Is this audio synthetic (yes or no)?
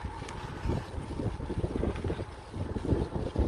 no